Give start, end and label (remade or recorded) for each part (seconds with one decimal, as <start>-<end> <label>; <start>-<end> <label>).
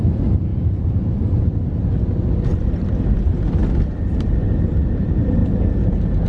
0.0-6.3 recorded